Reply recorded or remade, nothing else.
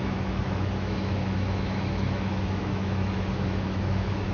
remade